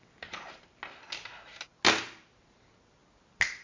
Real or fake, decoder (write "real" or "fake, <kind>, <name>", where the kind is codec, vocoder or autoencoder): real